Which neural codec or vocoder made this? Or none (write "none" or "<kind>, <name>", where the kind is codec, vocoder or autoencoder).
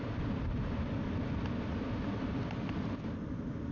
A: none